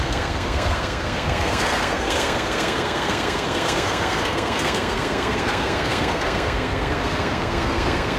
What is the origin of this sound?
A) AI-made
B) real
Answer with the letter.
A